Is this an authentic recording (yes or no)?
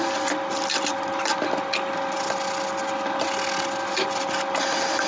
yes